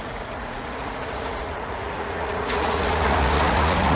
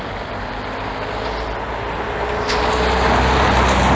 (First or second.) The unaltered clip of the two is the second